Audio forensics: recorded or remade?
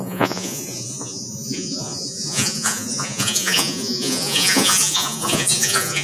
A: remade